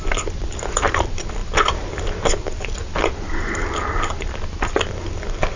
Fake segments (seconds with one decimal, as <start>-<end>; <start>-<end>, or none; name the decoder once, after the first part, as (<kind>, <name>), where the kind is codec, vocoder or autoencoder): none